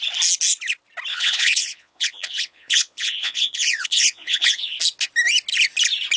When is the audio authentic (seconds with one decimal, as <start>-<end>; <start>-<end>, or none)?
0.0-1.1; 4.8-6.2